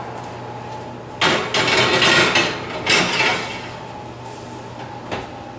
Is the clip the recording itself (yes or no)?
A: yes